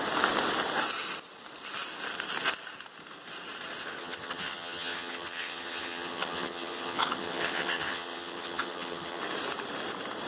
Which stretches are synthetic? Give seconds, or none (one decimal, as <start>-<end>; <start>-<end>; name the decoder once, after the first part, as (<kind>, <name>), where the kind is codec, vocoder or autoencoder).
4.0-9.2 (vocoder, HiFi-GAN)